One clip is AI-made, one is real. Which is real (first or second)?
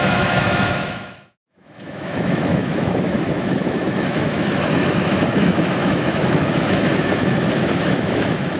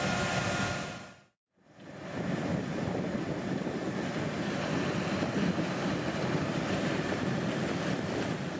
second